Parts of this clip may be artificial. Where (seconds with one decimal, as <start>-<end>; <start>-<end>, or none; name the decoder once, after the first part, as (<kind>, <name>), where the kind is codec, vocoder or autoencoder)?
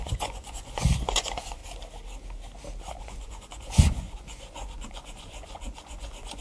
0.0-1.6 (vocoder, Vocos); 3.0-6.4